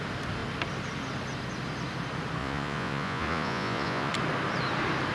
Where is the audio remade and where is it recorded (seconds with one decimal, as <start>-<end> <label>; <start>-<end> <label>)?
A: 0.0-2.4 recorded; 2.4-4.1 remade; 4.1-5.1 recorded